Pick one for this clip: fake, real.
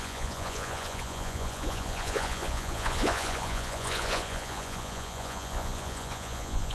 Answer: fake